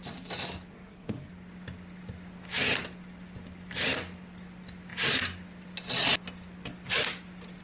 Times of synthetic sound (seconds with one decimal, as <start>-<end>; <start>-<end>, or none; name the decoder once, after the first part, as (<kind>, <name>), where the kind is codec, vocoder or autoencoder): 0.7-1.3 (codec, SNAC)

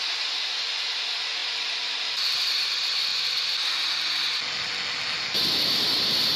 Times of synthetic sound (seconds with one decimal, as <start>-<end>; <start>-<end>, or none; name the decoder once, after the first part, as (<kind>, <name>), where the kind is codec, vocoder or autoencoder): none